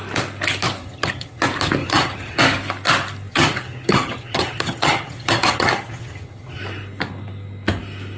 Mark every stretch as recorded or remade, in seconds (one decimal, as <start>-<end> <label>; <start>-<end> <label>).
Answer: 0.0-0.8 recorded; 0.8-1.4 remade; 1.4-1.8 recorded; 1.8-2.4 remade; 2.4-3.3 recorded; 3.3-6.6 remade; 6.6-8.2 recorded